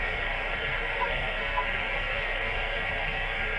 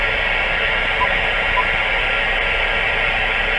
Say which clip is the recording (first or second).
second